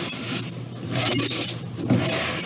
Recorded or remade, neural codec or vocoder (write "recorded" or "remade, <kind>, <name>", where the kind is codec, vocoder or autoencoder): recorded